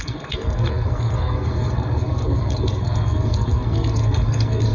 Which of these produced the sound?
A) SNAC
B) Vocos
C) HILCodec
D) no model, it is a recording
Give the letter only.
A